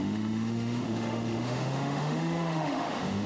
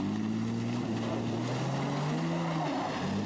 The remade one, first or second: first